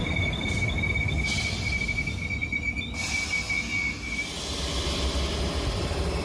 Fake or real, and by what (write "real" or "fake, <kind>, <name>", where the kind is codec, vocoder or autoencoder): real